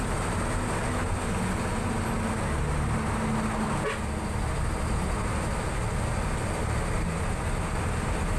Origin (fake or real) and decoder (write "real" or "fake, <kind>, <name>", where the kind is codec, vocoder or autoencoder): real